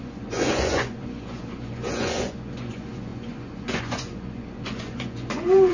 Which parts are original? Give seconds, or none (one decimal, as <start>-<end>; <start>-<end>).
none